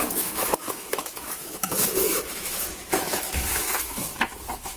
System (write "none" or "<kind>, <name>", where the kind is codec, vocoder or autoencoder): autoencoder, DAC-VAE